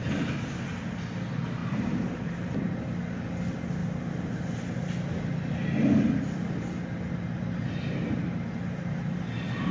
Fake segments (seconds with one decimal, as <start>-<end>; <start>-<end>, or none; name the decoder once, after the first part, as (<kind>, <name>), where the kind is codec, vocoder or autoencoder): 1.6-2.6 (vocoder, BigVGAN v2)